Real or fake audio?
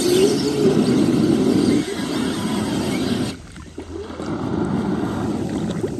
real